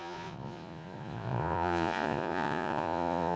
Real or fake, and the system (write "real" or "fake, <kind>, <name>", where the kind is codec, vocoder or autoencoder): fake, vocoder, Vocos